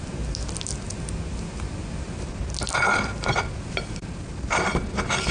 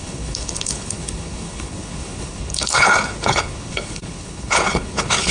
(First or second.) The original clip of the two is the first